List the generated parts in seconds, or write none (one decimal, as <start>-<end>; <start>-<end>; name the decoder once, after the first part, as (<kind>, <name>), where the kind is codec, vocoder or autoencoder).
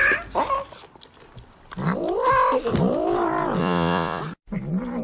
3.6-4.2 (vocoder, Vocos)